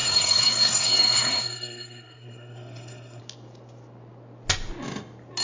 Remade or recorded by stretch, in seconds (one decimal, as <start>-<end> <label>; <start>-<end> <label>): 0.0-3.2 remade; 3.2-5.4 recorded